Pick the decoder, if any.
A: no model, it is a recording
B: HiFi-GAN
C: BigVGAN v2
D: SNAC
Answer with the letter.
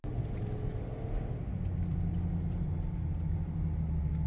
A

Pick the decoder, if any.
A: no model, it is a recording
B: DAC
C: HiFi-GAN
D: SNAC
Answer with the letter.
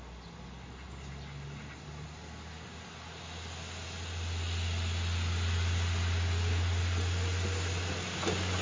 A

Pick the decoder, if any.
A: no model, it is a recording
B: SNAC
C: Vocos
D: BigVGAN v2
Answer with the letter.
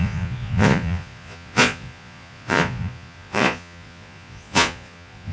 C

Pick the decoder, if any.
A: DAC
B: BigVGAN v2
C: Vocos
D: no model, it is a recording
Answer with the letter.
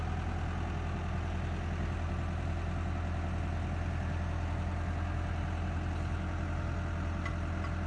D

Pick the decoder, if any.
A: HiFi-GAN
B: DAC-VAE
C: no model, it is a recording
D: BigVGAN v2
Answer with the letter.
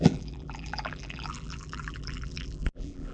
D